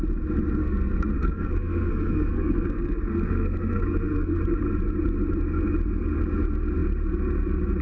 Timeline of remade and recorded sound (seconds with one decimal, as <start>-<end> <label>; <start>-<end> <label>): 0.0-0.6 recorded; 0.6-4.4 remade; 4.4-7.8 recorded